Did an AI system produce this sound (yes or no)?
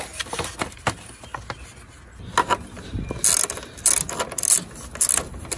no